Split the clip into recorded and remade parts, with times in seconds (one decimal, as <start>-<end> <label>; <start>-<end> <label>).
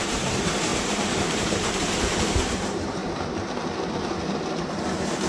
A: 0.0-3.0 remade; 3.0-5.3 recorded